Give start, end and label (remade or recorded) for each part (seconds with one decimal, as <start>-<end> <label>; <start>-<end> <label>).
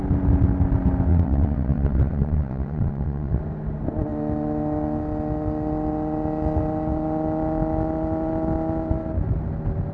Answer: 0.0-1.1 recorded; 1.1-3.4 remade; 3.4-9.9 recorded